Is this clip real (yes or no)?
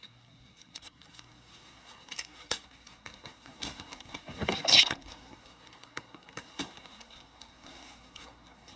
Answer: no